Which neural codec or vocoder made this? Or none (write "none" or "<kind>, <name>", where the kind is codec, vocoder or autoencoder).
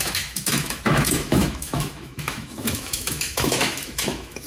autoencoder, DAC-VAE